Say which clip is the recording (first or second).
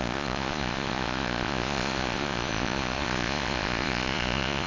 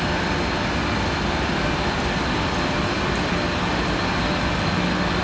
second